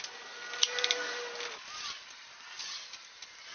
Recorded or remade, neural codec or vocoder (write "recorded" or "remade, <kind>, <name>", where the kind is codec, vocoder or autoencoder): recorded